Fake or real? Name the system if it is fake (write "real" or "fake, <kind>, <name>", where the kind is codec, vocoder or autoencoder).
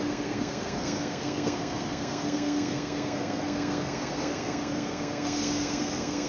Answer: fake, codec, SNAC